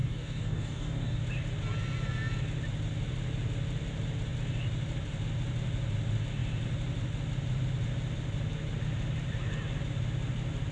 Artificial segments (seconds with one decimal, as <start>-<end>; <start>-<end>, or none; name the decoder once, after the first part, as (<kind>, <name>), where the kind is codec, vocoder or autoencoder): 0.0-1.2 (codec, DAC)